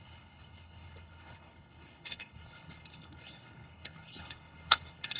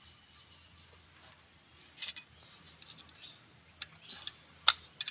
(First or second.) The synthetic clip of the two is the first